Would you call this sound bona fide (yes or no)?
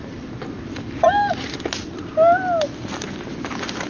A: yes